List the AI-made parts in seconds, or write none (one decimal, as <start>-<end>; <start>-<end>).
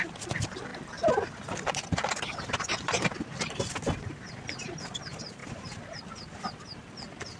none